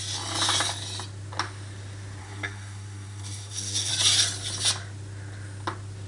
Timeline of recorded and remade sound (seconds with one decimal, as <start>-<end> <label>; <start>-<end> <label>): 0.0-2.2 recorded; 2.2-3.9 remade; 3.9-6.1 recorded